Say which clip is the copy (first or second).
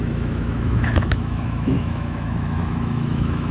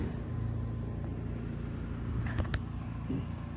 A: first